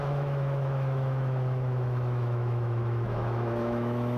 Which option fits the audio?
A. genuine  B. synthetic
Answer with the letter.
B